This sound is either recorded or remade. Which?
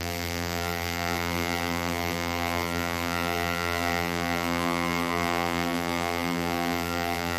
remade